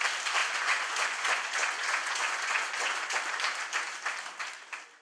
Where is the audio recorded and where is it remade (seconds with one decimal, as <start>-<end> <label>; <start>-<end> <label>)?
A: 0.0-0.4 recorded; 0.4-3.2 remade; 3.2-5.0 recorded